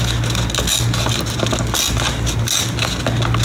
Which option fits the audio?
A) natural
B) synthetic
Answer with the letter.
A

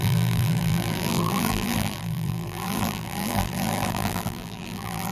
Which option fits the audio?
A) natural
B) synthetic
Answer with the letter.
B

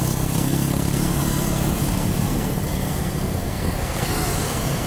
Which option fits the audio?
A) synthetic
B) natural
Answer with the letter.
A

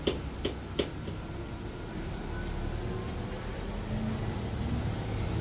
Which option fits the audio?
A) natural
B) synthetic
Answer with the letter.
A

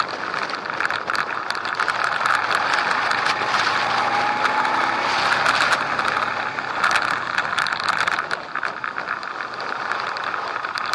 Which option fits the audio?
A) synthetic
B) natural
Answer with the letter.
B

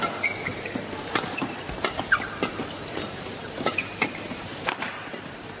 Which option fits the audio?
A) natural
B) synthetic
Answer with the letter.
B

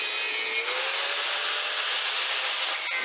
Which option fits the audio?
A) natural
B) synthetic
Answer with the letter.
A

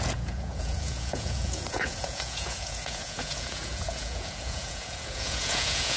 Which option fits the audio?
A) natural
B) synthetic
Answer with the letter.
B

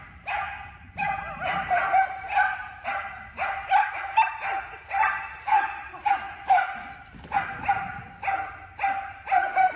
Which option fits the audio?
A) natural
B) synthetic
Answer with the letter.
A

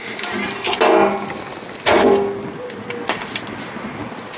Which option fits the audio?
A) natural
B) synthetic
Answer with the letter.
A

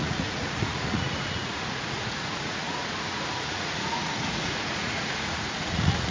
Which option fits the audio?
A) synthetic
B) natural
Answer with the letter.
A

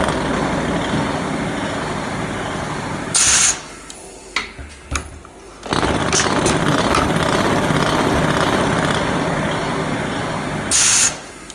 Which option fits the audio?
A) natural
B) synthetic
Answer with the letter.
A